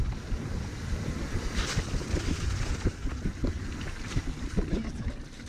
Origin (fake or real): real